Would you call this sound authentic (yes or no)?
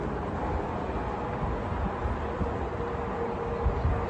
yes